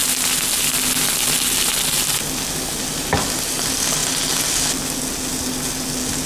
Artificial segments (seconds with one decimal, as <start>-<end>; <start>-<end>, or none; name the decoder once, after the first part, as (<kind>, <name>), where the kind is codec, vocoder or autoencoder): none